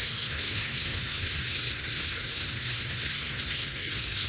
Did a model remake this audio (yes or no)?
yes